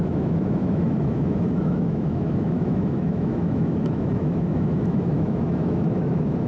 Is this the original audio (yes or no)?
no